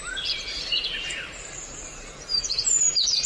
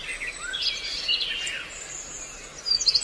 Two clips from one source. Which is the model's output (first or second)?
first